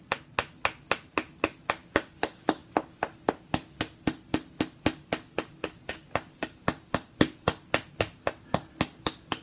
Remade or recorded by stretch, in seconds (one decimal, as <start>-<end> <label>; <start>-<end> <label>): 0.0-9.4 recorded